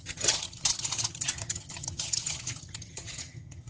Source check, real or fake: fake